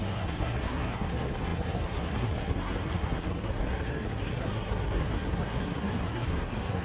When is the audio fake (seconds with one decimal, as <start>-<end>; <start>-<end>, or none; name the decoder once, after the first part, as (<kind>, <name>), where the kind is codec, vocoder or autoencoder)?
0.0-6.8 (codec, SNAC)